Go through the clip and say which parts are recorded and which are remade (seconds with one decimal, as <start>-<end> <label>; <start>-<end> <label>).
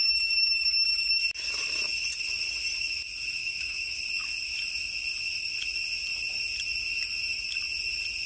0.0-1.2 remade; 1.2-3.4 recorded; 3.4-4.0 remade; 4.0-8.3 recorded